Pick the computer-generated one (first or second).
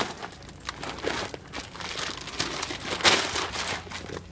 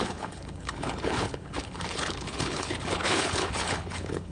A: second